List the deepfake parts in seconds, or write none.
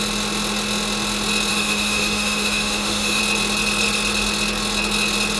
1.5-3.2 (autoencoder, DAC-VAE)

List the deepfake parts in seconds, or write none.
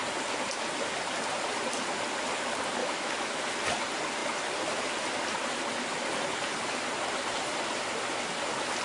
2.8-3.4 (autoencoder, DAC-VAE)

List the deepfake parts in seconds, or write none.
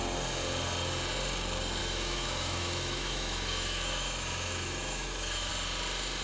1.8-5.5 (autoencoder, DAC-VAE)